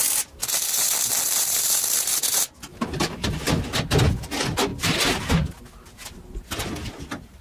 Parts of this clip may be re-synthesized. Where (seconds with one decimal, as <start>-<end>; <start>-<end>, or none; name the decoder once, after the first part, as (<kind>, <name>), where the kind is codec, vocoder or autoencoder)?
0.4-1.7 (vocoder, BigVGAN v2); 2.7-3.5